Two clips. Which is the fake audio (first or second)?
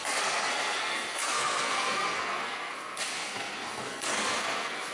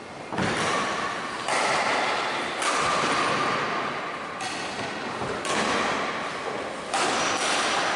first